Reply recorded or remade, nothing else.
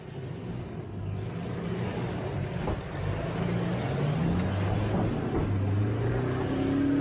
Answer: recorded